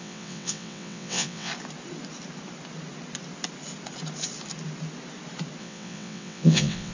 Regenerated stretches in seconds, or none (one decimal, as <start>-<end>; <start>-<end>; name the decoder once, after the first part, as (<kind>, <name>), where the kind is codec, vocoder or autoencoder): 0.0-1.5 (vocoder, WaveNeXt); 5.6-6.9